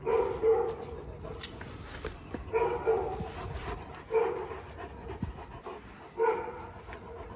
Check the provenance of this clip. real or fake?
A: real